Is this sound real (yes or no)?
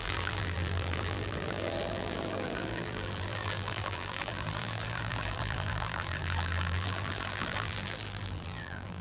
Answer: no